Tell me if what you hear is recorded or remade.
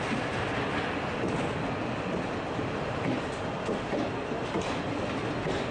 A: recorded